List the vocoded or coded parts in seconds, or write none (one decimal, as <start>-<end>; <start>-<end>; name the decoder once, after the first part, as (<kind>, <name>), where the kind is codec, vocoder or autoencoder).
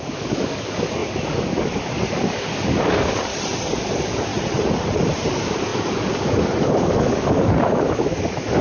0.0-3.3 (codec, DAC); 3.8-4.3; 5.3-8.6